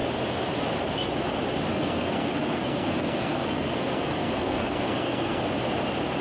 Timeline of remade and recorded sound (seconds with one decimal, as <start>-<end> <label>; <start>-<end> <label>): 0.0-1.7 recorded; 1.7-5.4 remade; 5.4-6.2 recorded